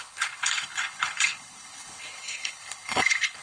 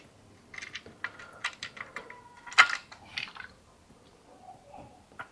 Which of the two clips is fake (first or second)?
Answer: first